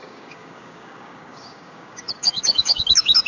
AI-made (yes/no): yes